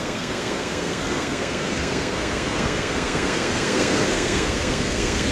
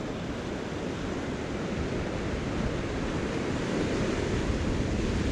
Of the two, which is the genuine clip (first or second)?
second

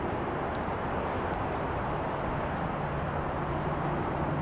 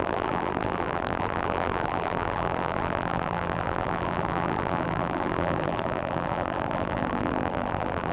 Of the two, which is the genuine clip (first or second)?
first